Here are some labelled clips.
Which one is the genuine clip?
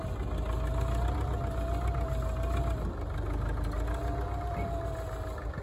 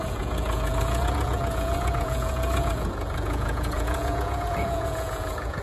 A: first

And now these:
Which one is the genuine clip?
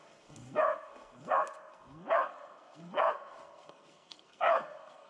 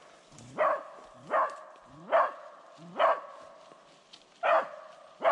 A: second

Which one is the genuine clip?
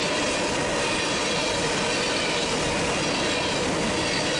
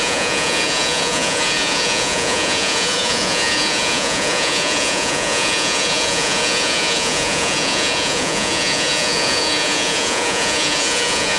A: first